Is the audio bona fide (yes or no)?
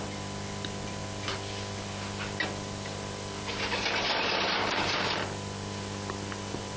yes